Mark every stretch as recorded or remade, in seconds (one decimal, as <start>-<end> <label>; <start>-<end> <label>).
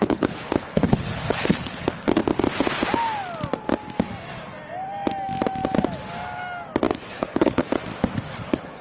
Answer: 0.0-2.2 remade; 2.2-7.1 recorded; 7.1-7.6 remade; 7.6-8.3 recorded; 8.3-8.8 remade